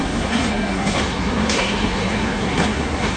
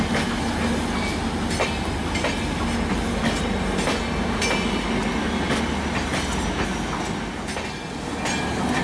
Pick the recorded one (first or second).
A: second